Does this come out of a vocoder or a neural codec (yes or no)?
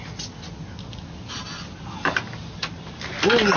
no